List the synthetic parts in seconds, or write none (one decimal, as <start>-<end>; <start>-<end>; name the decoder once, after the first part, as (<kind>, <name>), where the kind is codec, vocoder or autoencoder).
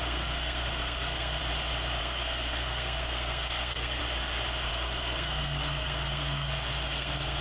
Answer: 0.0-1.4 (codec, SNAC); 2.0-4.0; 4.7-7.4